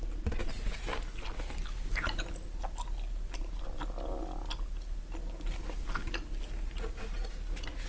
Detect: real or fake real